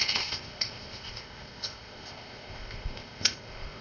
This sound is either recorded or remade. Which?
remade